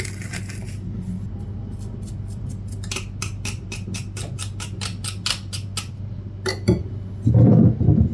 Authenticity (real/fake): real